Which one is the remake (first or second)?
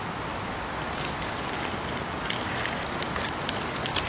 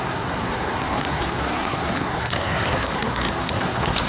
second